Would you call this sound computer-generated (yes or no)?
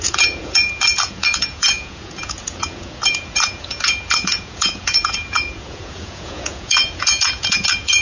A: yes